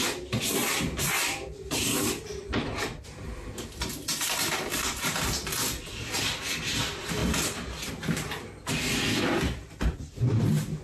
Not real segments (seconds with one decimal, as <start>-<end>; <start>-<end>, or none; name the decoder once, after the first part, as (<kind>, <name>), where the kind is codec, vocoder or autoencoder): 0.6-1.8 (vocoder, BigVGAN v2); 9.6-10.3